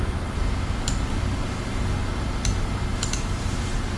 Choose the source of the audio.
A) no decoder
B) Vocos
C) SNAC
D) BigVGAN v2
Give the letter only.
A